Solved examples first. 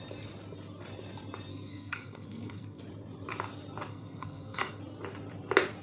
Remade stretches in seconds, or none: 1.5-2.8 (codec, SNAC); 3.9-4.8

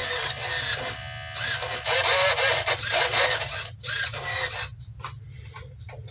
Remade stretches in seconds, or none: none

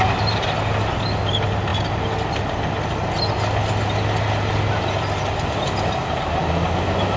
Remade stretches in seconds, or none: none

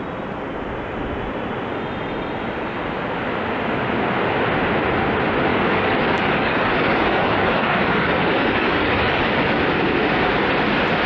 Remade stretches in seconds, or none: 5.5-9.3 (codec, DAC)